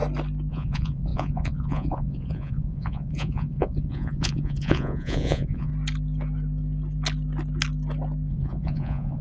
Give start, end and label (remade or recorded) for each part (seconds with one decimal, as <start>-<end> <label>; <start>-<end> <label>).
0.0-0.5 recorded; 0.5-5.7 remade; 5.7-8.3 recorded; 8.3-9.2 remade